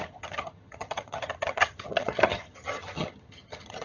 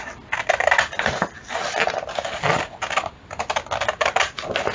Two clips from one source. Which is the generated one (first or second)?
first